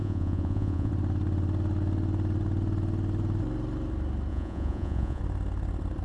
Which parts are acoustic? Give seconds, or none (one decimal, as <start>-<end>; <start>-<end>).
0.9-4.3; 5.2-6.0